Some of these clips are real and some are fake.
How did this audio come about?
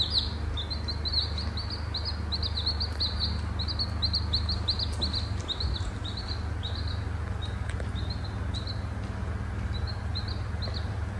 real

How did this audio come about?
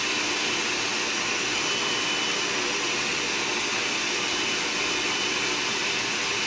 real